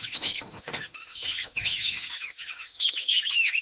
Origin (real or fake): fake